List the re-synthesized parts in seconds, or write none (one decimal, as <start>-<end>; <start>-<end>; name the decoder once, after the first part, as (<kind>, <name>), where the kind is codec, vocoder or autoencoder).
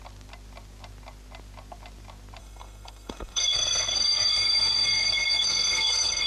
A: 2.4-6.3 (codec, SNAC)